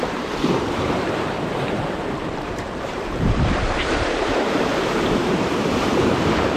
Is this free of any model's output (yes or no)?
no